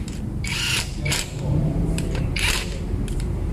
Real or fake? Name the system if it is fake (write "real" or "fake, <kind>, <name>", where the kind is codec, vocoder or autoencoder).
fake, vocoder, BigVGAN v2